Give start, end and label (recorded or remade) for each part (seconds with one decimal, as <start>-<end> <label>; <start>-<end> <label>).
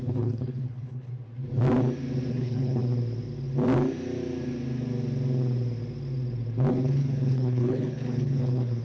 0.0-1.1 remade; 1.1-2.3 recorded; 2.3-2.8 remade; 2.8-6.7 recorded; 6.7-8.8 remade